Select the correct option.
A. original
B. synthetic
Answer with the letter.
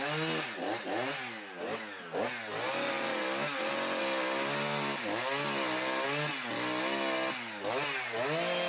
A